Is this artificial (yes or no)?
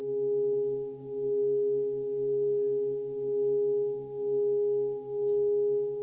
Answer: no